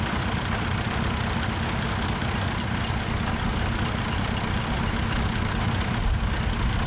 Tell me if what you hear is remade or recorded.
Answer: recorded